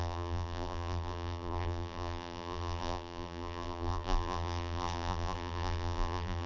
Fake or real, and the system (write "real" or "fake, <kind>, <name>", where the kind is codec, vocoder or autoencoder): fake, vocoder, BigVGAN v2